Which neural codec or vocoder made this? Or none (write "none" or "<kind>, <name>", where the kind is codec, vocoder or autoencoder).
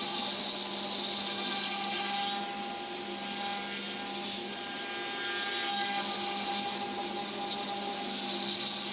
none